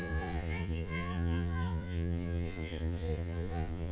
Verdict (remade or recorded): remade